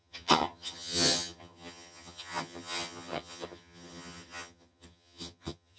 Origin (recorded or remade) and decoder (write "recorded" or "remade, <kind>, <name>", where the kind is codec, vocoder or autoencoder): remade, vocoder, HiFi-GAN